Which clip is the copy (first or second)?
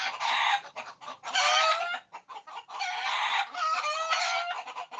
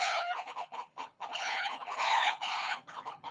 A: second